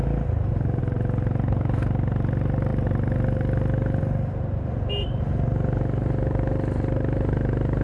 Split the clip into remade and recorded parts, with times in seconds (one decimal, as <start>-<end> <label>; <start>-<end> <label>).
0.0-7.8 recorded